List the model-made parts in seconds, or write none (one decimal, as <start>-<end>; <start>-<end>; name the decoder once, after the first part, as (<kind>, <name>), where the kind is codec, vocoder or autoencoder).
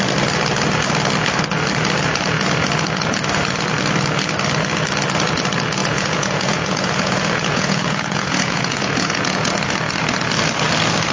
5.8-9.5 (vocoder, Vocos)